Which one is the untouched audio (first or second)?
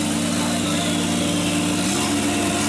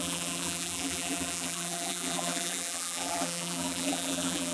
first